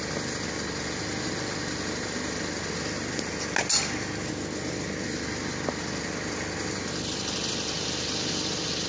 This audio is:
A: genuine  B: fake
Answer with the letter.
A